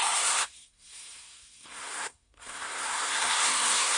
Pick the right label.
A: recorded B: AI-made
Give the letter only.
B